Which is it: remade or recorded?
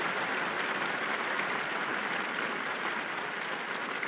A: remade